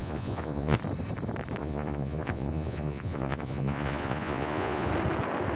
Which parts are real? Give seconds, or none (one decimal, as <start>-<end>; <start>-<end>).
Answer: 0.8-1.6; 4.9-5.6